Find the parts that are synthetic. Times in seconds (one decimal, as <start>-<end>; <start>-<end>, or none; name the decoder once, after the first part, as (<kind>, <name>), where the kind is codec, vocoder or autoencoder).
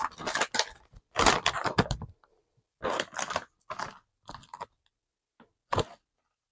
none